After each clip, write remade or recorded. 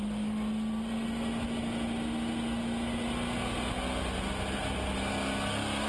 recorded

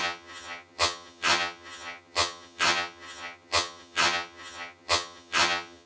remade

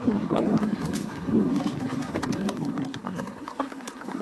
remade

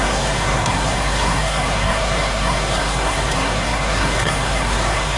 remade